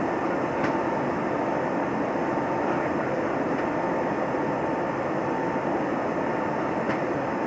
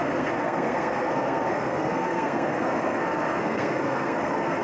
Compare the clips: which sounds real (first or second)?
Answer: first